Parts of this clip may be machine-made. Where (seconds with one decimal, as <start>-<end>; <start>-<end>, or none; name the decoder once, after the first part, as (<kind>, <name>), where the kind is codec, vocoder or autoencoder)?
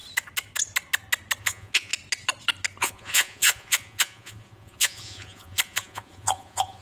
1.4-1.9 (vocoder, Vocos); 2.8-6.8